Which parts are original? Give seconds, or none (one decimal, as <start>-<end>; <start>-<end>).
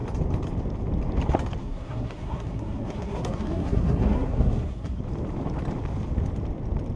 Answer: 0.0-1.6; 5.0-7.0